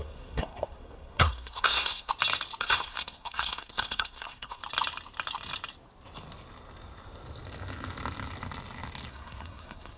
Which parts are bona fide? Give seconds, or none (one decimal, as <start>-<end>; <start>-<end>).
2.1-2.6; 4.6-9.1